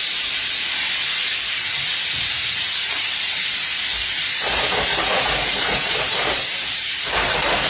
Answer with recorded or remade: remade